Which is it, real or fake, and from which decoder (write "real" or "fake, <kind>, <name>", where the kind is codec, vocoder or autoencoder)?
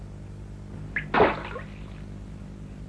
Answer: real